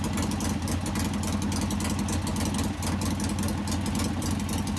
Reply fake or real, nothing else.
real